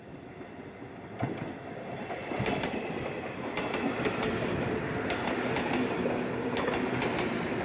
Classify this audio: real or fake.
real